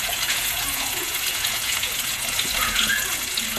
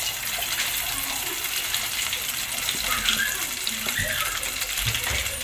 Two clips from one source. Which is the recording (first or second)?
second